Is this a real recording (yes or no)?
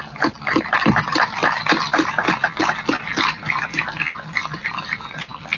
yes